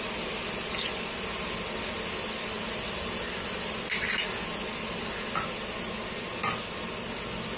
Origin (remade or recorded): recorded